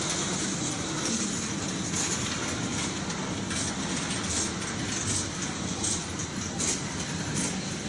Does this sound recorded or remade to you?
recorded